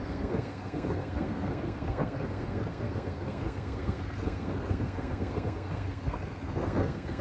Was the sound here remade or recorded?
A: remade